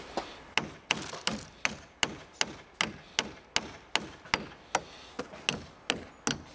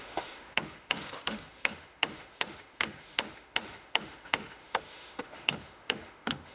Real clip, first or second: first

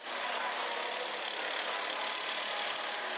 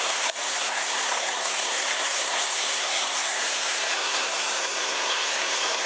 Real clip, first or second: first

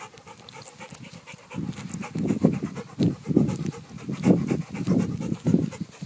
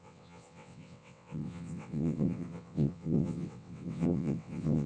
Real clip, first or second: first